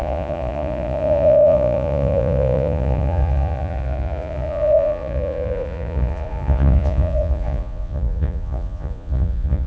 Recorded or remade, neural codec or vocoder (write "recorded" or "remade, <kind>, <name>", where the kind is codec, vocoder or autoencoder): remade, vocoder, Vocos